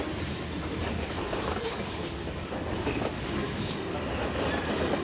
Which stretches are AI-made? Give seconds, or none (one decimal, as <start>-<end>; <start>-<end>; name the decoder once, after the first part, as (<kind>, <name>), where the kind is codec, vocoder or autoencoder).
0.8-3.8 (codec, DAC)